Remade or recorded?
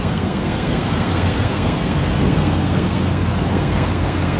remade